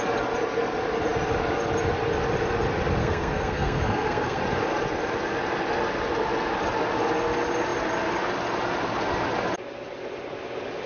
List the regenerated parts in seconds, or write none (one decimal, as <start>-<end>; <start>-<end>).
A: 3.0-4.4